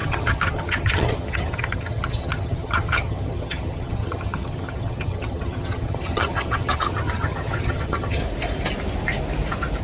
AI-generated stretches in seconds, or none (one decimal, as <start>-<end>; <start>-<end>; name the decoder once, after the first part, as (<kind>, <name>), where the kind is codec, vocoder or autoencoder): 0.0-8.2 (vocoder, HiFi-GAN)